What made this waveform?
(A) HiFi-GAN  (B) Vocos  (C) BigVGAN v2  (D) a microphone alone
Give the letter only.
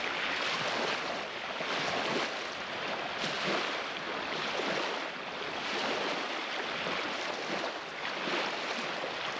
D